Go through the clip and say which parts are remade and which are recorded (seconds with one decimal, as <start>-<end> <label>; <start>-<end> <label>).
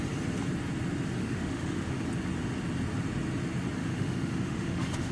0.0-1.2 recorded; 1.2-2.0 remade; 2.0-3.8 recorded; 3.8-5.1 remade